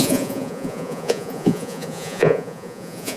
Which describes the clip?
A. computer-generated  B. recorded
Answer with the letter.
A